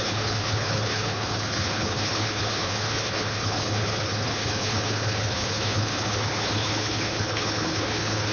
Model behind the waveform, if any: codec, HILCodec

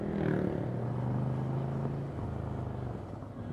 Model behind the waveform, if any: none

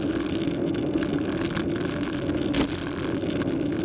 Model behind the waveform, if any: none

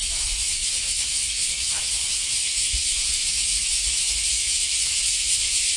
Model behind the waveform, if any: autoencoder, DAC-VAE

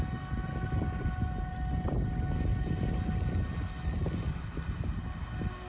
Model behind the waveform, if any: none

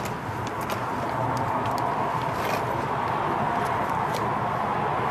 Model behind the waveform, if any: none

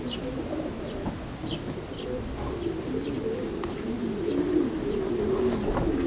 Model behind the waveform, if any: none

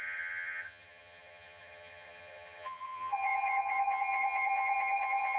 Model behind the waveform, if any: vocoder, HiFi-GAN